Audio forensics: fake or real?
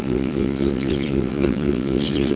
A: fake